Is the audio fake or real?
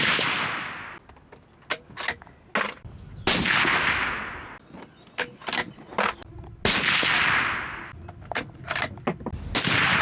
real